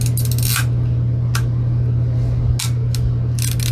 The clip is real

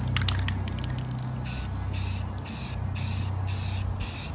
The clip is real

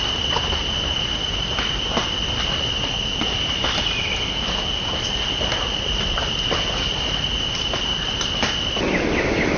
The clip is real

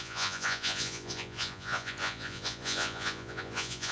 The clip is fake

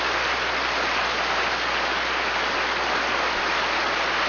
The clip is real